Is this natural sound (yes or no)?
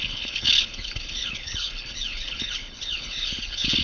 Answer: no